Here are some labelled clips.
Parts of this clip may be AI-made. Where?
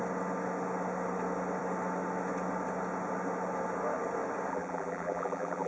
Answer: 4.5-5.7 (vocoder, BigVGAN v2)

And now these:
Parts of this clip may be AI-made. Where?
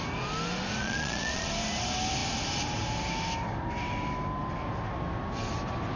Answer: 0.8-1.5 (vocoder, Vocos)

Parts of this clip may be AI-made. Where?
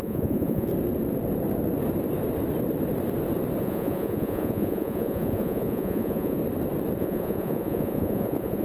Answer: 0.0-0.7 (vocoder, Vocos); 3.6-6.4; 7.0-8.6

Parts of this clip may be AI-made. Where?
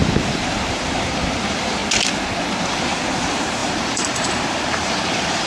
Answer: 0.7-1.8 (vocoder, BigVGAN v2); 2.7-5.5